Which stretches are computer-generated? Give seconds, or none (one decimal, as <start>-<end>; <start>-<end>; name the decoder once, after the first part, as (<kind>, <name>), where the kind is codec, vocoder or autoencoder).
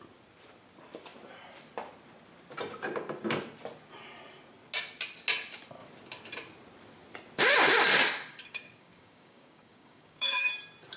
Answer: 8.3-10.5 (codec, DAC)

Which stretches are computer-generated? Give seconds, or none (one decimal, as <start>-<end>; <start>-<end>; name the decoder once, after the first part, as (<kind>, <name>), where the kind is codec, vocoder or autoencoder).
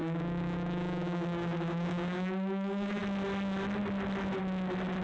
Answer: 0.0-3.0 (codec, DAC)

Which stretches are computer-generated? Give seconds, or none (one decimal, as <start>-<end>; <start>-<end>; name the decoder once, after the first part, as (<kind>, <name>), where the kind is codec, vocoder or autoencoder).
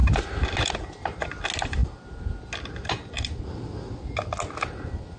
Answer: none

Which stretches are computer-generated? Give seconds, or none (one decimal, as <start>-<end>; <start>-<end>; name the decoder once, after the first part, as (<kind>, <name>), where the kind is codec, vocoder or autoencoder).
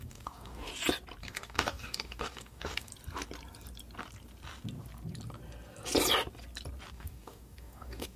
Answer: 0.0-0.7 (codec, DAC); 1.2-2.9; 6.9-8.2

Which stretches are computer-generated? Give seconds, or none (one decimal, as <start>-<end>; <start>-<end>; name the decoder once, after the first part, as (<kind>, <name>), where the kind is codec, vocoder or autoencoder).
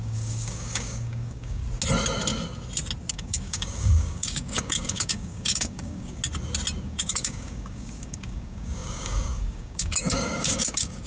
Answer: 0.0-1.6 (codec, DAC); 3.1-6.2; 6.8-11.1